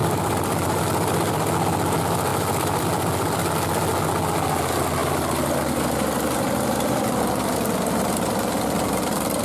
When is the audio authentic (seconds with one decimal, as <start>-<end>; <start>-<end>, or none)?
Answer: 0.8-2.3; 3.5-5.0; 7.2-9.4